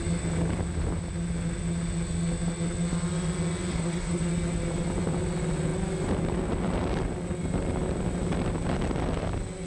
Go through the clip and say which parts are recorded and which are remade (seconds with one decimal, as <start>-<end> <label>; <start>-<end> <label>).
0.0-3.7 recorded; 3.7-4.3 remade; 4.3-9.7 recorded